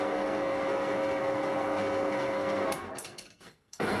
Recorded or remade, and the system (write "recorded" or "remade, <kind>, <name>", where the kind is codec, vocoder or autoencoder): remade, codec, SNAC